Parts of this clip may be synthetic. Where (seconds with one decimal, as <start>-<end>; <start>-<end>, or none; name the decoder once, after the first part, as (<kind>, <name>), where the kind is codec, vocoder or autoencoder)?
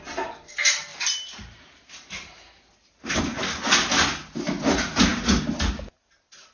0.9-3.2 (vocoder, BigVGAN v2)